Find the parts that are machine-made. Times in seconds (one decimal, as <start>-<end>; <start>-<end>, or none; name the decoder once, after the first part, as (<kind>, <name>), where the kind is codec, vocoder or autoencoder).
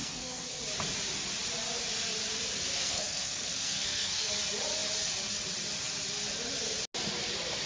0.0-0.6 (codec, SNAC); 2.7-4.3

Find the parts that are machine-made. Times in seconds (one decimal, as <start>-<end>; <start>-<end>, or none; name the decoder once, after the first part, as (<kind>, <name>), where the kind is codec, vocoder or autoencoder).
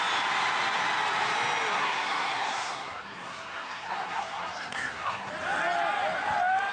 1.7-5.3 (codec, SNAC)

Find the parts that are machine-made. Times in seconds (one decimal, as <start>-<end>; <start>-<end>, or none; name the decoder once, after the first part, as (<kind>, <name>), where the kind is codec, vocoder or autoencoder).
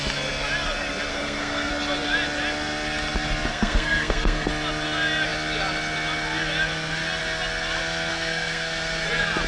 1.1-1.7 (codec, SNAC); 3.5-4.5; 8.1-9.1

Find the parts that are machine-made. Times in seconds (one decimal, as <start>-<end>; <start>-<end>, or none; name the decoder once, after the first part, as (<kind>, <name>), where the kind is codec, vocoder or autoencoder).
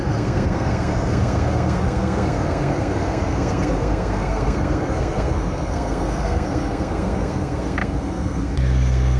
0.0-9.2 (codec, SNAC)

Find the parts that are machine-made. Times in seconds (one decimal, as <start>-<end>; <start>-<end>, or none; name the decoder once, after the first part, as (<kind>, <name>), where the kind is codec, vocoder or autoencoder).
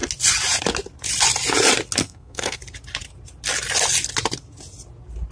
2.0-2.6 (codec, SNAC)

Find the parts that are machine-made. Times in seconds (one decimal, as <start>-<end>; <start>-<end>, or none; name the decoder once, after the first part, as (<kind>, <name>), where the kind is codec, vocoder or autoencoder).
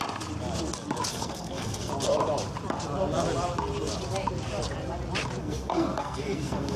1.1-1.9 (codec, SNAC); 5.4-6.8